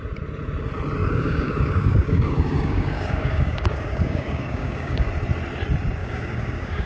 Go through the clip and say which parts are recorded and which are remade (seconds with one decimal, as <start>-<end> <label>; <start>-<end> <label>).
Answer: 0.0-1.0 recorded; 1.0-5.1 remade; 5.1-6.0 recorded; 6.0-6.9 remade